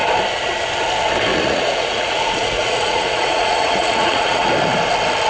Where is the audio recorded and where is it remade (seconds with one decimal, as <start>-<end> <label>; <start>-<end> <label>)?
0.0-1.3 recorded; 1.3-4.5 remade; 4.5-5.3 recorded